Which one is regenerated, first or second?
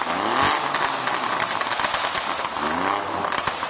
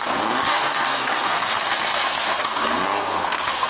second